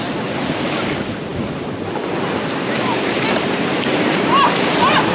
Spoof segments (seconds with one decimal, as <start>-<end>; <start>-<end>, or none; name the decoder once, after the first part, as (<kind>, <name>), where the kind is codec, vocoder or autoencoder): none